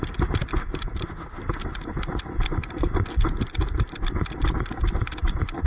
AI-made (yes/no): no